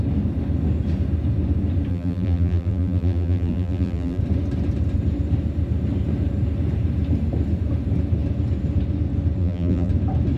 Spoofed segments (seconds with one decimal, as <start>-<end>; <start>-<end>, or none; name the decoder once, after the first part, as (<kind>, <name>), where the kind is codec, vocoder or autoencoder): 1.9-4.2 (vocoder, BigVGAN v2); 9.4-9.9